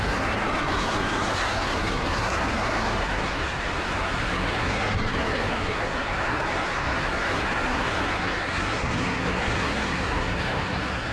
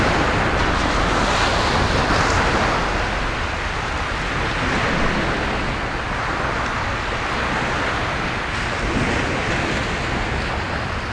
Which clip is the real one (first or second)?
second